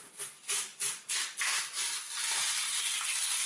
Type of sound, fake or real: real